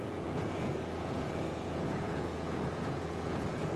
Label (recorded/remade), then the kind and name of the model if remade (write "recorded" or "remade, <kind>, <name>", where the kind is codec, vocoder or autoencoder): remade, vocoder, Vocos